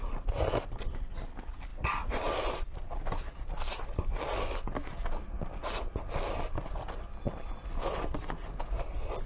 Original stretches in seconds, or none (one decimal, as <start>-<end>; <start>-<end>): 0.0-9.3